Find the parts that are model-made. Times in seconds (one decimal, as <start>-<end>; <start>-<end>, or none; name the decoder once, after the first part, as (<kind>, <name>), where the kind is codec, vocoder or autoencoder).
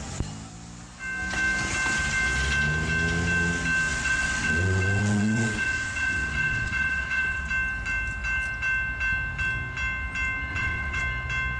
3.9-7.5 (vocoder, WaveNeXt); 10.5-11.0